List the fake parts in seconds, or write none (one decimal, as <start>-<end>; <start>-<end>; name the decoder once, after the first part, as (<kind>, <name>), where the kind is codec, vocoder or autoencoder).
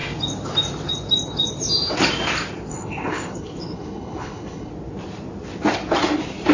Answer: 2.7-4.7 (codec, HILCodec)